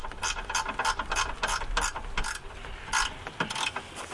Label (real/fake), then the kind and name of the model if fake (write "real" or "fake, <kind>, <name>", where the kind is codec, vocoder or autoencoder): real